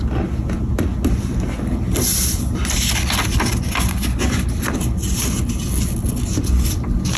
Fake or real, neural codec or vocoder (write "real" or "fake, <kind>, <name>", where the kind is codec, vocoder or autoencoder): real